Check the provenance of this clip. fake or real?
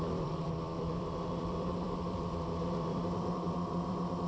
fake